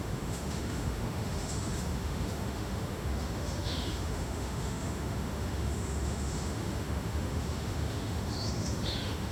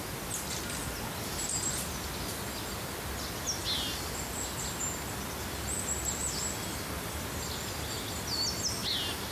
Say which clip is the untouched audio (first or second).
second